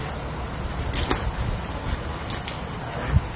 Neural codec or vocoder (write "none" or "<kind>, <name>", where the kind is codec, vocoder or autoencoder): none